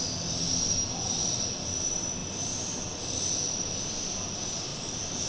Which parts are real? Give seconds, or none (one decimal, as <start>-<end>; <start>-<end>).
0.0-5.3

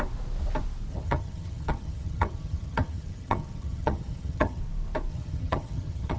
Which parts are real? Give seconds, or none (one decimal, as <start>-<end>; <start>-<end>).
0.0-0.9; 4.6-5.1

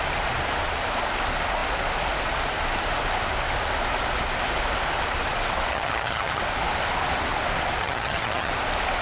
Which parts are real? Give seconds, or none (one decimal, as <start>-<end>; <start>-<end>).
0.0-5.7; 6.4-7.8; 8.5-9.0

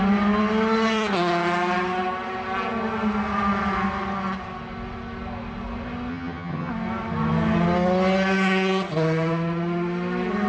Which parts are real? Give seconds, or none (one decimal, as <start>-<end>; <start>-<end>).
0.0-6.1; 6.7-10.5

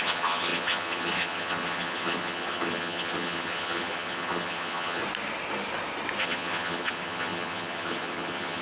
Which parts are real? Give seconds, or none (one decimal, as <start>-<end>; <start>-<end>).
5.0-6.2

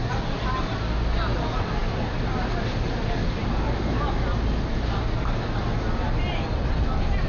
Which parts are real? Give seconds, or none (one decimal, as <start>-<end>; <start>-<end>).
0.0-7.3